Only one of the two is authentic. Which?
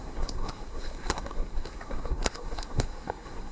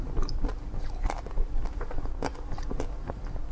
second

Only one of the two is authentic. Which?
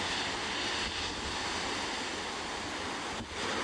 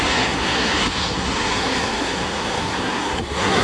first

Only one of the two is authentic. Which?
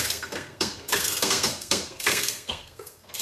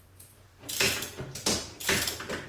second